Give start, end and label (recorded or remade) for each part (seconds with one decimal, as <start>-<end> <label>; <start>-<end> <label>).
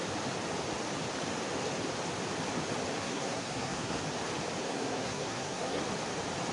0.0-3.0 recorded; 3.0-4.0 remade; 4.0-4.6 recorded; 4.6-5.8 remade; 5.8-6.5 recorded